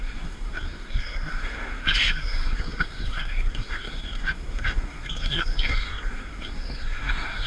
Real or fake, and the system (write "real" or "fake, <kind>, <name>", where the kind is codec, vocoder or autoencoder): fake, codec, SNAC